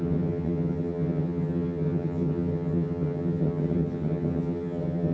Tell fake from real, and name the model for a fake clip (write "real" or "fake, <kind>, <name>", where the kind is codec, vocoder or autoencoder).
fake, vocoder, HiFi-GAN